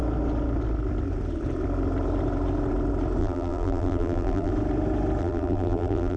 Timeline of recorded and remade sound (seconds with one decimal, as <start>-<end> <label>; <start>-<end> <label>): 0.0-3.2 recorded; 3.2-4.5 remade; 4.5-5.2 recorded; 5.2-6.2 remade